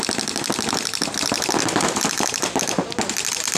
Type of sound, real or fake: real